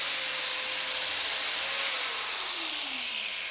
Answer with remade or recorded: recorded